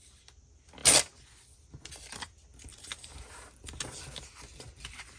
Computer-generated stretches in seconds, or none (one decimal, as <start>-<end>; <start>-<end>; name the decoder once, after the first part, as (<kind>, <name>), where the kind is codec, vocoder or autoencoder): none